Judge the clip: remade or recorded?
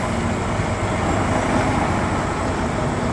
recorded